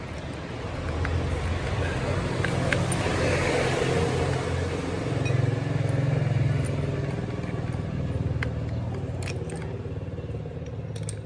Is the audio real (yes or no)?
yes